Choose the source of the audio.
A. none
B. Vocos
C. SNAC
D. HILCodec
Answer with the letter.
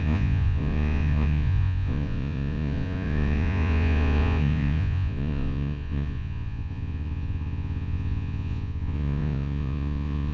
B